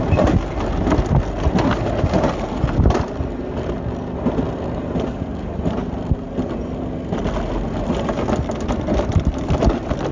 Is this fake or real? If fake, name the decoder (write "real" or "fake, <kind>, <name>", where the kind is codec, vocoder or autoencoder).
real